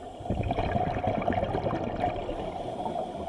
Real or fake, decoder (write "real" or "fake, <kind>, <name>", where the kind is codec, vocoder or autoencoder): real